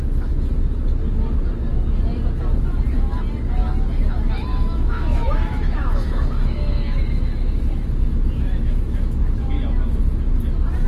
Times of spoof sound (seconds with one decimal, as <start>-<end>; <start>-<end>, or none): 4.5-9.5